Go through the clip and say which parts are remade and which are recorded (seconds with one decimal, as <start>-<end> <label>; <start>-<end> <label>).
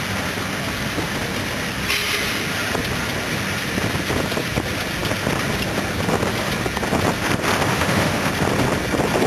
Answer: 0.0-7.7 recorded; 7.7-8.3 remade; 8.3-9.3 recorded